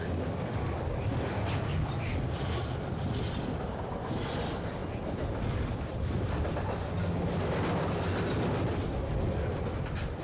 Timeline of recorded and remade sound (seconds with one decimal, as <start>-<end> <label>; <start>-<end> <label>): 0.0-10.2 recorded